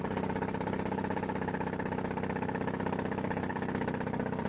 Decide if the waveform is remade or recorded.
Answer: recorded